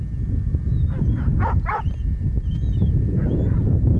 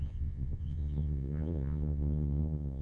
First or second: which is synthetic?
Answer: second